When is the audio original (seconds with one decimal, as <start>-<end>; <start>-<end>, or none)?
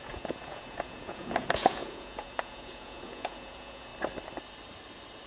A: 3.9-5.3